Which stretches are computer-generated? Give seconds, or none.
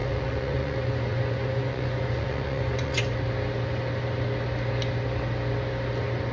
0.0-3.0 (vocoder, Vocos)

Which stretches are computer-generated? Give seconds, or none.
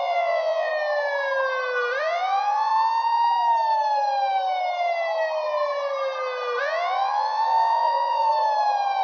0.0-0.7 (vocoder, Vocos); 2.0-2.7; 6.6-8.3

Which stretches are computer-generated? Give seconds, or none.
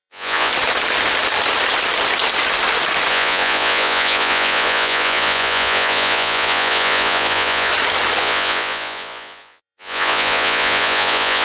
0.0-0.5 (vocoder, Vocos); 3.1-7.7; 8.2-11.4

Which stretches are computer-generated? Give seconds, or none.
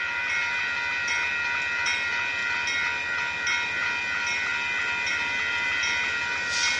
none